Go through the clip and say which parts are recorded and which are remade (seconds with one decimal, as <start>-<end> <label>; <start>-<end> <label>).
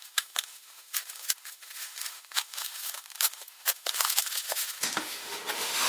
0.0-5.9 remade